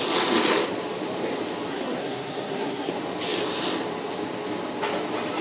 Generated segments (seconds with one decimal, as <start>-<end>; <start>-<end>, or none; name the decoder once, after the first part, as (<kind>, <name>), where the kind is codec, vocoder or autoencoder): 1.7-2.9 (codec, SNAC)